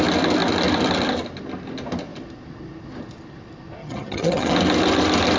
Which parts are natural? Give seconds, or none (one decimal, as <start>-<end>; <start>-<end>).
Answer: 0.0-3.8; 4.5-5.4